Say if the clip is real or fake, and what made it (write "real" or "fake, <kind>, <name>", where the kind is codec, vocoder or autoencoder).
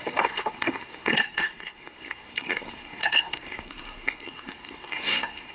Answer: fake, codec, SNAC